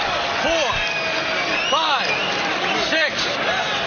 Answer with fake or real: real